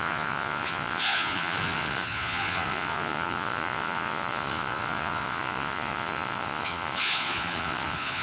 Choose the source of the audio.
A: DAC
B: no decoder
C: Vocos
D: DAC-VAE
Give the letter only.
C